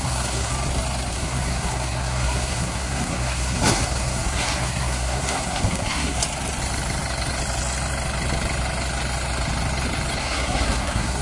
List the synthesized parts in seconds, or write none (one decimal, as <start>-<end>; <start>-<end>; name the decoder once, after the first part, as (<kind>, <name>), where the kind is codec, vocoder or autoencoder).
0.0-0.5 (codec, SNAC); 1.1-6.2; 10.2-11.2